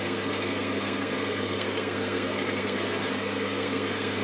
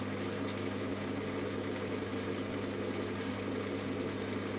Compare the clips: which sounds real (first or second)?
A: second